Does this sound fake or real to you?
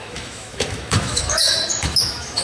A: fake